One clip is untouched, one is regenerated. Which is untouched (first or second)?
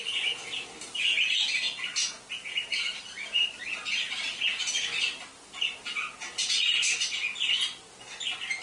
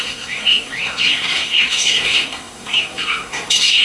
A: first